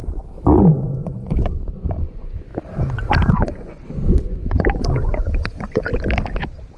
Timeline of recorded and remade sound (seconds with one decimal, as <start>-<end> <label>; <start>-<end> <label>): 0.0-0.7 recorded; 0.7-2.5 remade; 2.5-3.3 recorded; 3.3-5.9 remade; 5.9-6.8 recorded